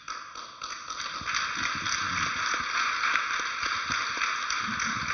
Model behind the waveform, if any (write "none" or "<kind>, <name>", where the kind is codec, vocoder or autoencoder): none